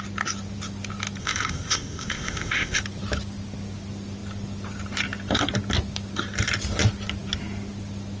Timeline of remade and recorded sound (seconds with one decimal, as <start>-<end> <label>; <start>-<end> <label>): 0.0-1.2 recorded; 1.2-2.8 remade; 2.8-8.2 recorded